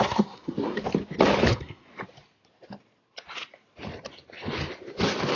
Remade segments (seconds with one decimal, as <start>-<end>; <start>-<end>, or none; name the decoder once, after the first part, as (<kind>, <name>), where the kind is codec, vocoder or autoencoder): 0.0-0.8 (codec, SNAC); 1.5-1.9